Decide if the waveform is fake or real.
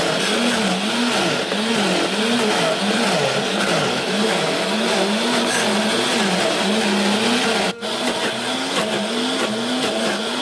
real